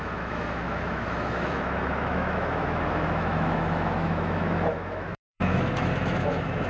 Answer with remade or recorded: remade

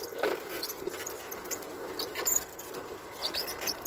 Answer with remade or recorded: remade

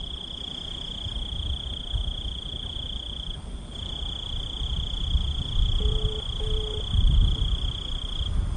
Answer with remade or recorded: remade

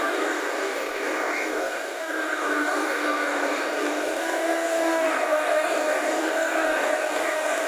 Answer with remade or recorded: remade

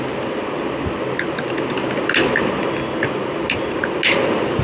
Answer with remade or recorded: recorded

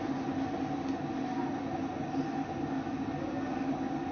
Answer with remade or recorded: recorded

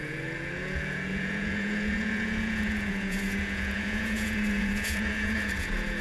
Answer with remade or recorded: remade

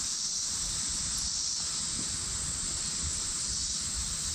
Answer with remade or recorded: recorded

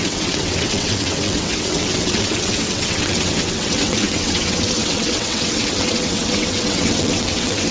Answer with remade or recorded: remade